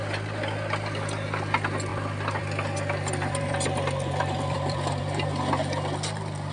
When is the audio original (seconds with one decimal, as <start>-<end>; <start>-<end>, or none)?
0.0-1.9; 5.3-6.5